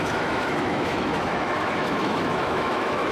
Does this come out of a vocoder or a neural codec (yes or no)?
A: yes